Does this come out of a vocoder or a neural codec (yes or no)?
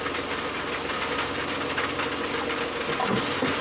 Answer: no